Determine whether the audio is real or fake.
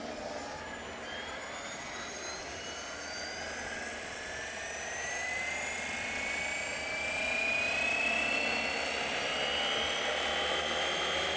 real